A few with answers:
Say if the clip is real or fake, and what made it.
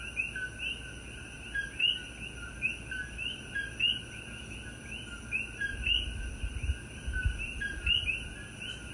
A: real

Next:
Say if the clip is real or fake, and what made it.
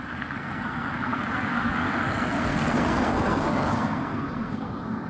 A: fake, codec, SNAC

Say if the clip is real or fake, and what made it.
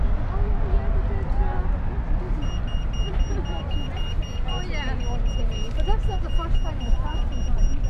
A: real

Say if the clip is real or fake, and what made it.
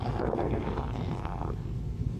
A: fake, codec, SNAC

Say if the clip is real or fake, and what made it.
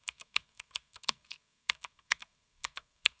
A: fake, codec, SNAC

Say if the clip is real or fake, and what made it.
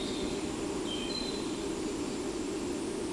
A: fake, vocoder, BigVGAN v2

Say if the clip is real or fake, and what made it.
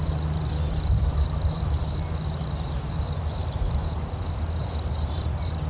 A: fake, vocoder, BigVGAN v2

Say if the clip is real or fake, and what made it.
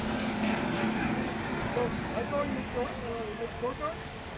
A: fake, codec, DAC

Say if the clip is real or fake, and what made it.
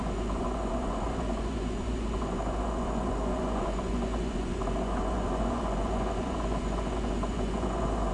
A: fake, vocoder, Vocos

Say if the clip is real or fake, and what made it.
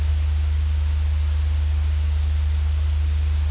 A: real